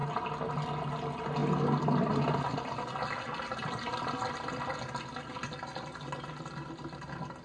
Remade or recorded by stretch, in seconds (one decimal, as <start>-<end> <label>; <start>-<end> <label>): 0.0-7.4 recorded